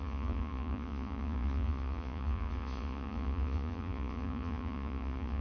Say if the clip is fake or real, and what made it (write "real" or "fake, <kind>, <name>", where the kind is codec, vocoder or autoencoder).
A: fake, vocoder, Vocos